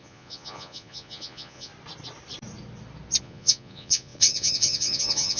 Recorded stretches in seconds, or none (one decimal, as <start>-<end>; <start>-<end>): 1.7-3.2